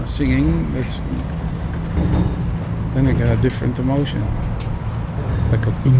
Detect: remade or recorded recorded